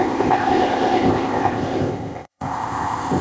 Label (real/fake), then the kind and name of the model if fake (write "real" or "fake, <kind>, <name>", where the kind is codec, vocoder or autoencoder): fake, codec, ZipCodec